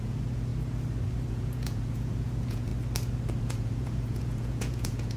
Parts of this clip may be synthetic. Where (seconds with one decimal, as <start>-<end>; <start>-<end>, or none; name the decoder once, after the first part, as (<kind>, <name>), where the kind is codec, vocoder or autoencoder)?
0.0-0.5 (vocoder, Vocos); 1.3-2.7; 3.4-5.2